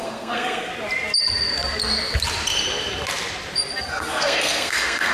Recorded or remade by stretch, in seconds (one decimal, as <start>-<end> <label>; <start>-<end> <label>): 0.0-0.7 remade; 0.7-3.8 recorded; 3.8-5.1 remade